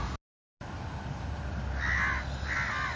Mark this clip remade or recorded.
recorded